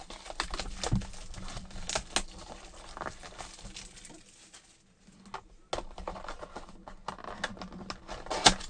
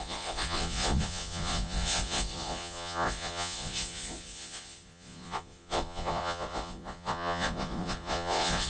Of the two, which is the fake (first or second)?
second